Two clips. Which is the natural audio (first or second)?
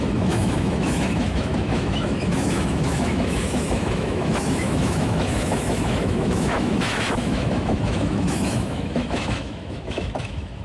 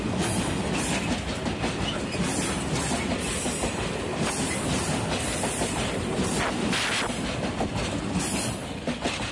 second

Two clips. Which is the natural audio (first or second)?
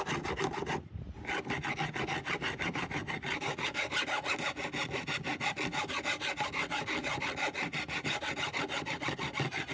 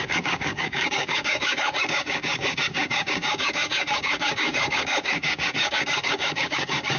first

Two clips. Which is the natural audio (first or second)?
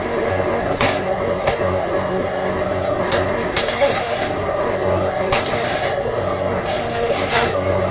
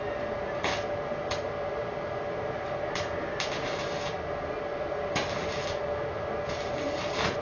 second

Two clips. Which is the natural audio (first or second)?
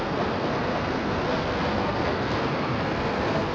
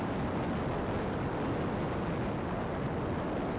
second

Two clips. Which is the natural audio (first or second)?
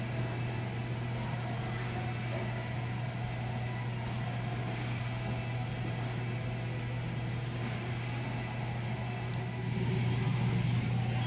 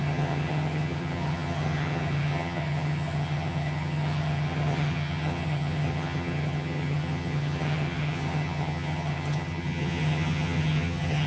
first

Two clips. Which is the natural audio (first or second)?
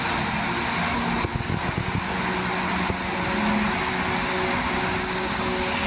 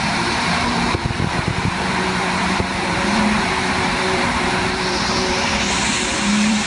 first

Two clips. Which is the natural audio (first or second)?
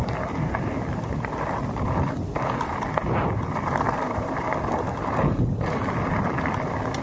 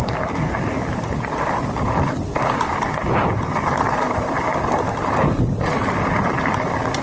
first